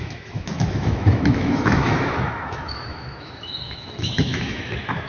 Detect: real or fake fake